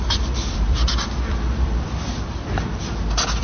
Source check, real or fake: fake